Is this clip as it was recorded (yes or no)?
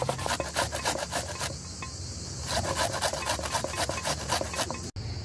yes